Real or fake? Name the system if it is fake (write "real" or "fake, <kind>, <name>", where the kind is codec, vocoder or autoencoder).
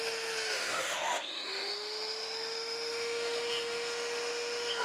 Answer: fake, autoencoder, DAC-VAE